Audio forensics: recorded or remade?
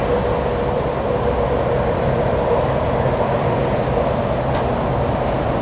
remade